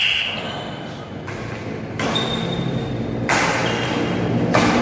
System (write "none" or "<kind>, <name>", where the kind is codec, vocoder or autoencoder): none